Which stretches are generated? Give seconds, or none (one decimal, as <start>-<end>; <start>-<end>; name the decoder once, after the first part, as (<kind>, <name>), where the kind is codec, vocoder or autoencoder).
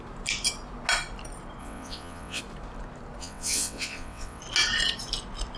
1.6-2.4 (vocoder, WaveNeXt); 3.2-4.4